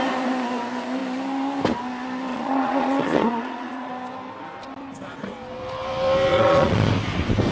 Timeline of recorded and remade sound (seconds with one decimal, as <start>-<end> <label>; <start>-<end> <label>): 0.0-2.3 recorded; 2.3-3.9 remade; 3.9-6.3 recorded; 6.3-6.9 remade; 6.9-7.5 recorded